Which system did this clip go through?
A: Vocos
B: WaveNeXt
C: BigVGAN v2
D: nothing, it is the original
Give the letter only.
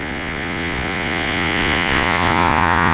A